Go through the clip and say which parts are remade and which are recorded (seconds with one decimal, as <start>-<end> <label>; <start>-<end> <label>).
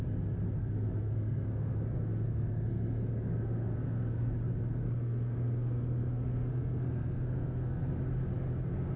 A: 0.0-0.6 recorded; 0.6-4.3 remade; 4.3-4.8 recorded; 4.8-7.9 remade; 7.9-9.0 recorded